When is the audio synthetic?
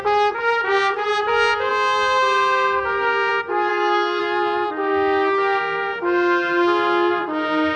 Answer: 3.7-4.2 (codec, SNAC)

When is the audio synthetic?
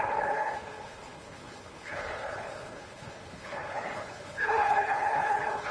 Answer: 0.0-5.7 (codec, HILCodec)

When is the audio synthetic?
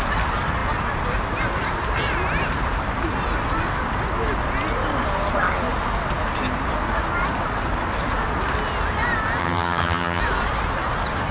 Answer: 9.4-10.2 (vocoder, HiFi-GAN)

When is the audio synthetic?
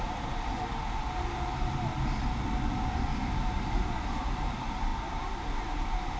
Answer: 0.0-1.9 (vocoder, BigVGAN v2); 2.7-3.1; 4.2-6.2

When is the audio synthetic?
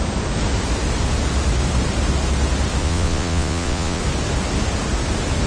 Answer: 2.8-4.0 (vocoder, Vocos)